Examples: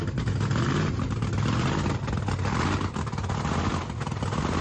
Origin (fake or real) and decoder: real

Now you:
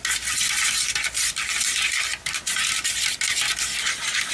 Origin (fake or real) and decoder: real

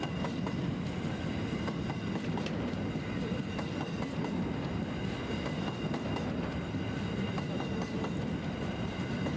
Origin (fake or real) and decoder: real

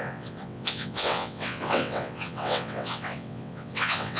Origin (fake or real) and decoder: fake, vocoder, WaveNeXt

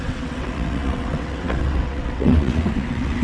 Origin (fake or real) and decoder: fake, vocoder, WaveNeXt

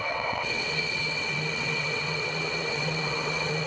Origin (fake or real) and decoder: fake, vocoder, WaveNeXt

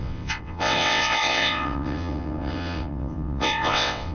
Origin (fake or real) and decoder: fake, vocoder, WaveNeXt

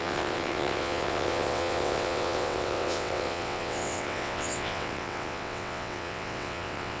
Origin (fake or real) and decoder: fake, vocoder, WaveNeXt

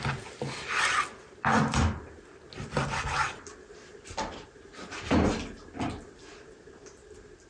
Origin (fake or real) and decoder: real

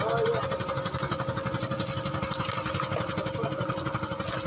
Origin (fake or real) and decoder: real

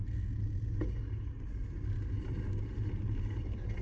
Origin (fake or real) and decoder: real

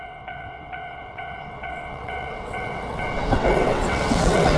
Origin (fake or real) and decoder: fake, vocoder, WaveNeXt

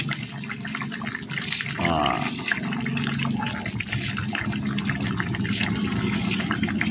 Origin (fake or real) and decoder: real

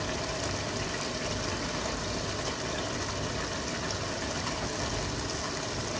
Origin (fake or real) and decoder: real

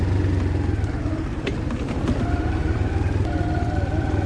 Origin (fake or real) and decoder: real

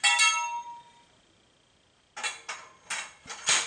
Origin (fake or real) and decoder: real